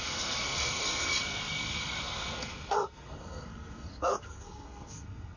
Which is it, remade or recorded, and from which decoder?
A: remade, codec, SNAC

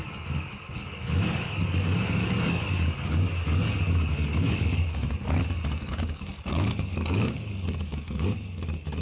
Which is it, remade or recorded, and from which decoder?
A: remade, codec, DAC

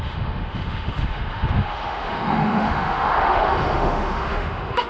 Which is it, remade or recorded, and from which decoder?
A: remade, autoencoder, DAC-VAE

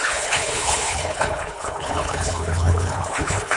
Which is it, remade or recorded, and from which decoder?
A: remade, codec, HILCodec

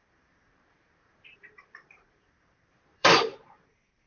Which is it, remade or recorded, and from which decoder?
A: remade, vocoder, BigVGAN v2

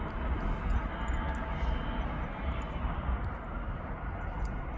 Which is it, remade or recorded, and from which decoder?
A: recorded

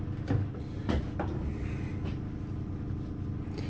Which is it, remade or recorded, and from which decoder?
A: recorded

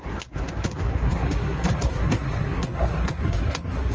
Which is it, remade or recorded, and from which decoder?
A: remade, codec, SNAC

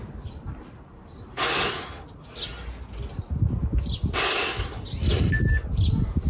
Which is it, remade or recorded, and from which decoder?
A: recorded